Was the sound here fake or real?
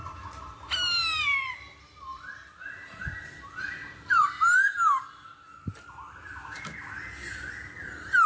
fake